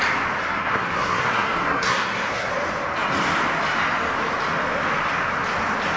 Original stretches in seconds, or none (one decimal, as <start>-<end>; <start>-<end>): 0.0-0.4; 2.5-6.0

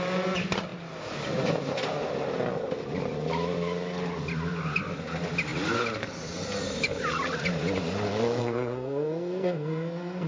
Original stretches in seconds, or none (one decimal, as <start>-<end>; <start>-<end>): 0.0-8.4

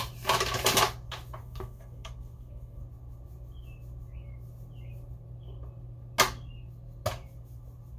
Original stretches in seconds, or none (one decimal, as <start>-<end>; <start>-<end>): 0.0-1.4; 2.8-8.0

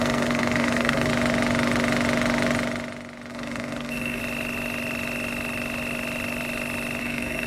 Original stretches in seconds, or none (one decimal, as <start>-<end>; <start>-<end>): 1.1-3.3; 4.2-7.0

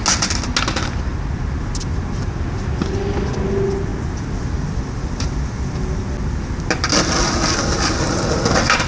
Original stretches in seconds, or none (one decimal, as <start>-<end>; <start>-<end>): 0.0-8.9